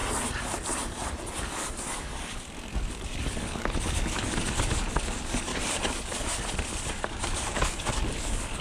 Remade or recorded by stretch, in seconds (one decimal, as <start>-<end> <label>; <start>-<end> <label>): 0.0-1.4 recorded; 1.4-5.5 remade; 5.5-6.9 recorded; 6.9-8.6 remade